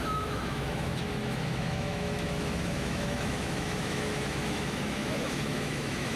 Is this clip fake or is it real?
fake